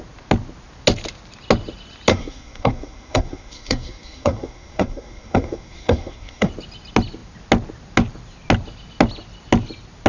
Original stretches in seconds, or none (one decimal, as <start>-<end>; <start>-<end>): 0.0-2.1; 6.5-10.1